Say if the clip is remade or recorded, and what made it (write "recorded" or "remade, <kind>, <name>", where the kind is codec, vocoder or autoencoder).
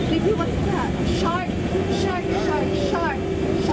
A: recorded